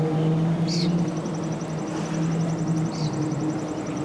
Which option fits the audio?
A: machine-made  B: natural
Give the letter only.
B